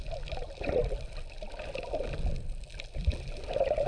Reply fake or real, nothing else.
real